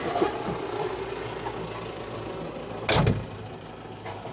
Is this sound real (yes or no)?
yes